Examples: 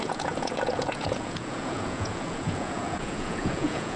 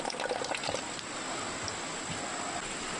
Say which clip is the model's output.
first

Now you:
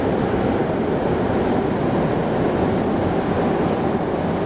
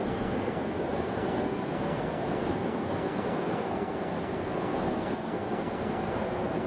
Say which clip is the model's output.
second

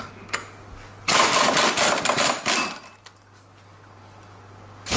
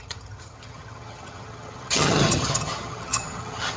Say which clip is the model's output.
second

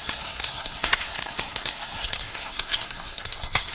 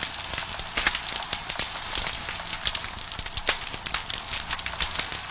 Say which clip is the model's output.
first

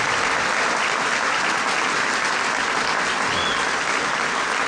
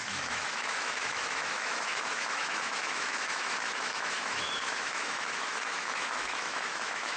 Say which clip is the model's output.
second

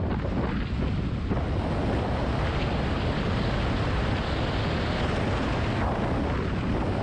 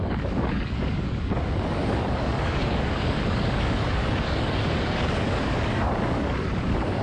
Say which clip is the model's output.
second